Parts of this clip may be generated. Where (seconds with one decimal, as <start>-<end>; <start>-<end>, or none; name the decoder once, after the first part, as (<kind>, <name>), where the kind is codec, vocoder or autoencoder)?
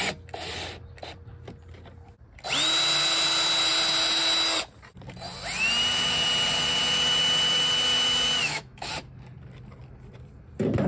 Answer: 8.4-8.9 (autoencoder, DAC-VAE)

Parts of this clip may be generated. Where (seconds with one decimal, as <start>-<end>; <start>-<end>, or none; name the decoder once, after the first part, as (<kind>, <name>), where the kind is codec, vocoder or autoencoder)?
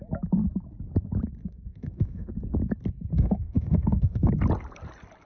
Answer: 1.4-2.3 (autoencoder, DAC-VAE); 3.1-4.3